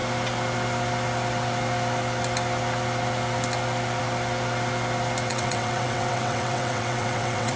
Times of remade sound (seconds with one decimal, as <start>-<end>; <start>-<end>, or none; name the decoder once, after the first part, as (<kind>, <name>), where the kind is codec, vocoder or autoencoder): 5.3-7.6 (vocoder, WaveNeXt)